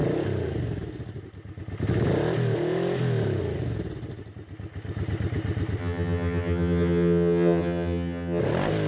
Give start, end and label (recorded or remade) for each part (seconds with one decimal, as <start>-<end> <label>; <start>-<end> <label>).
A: 0.0-5.8 recorded; 5.8-8.4 remade; 8.4-8.9 recorded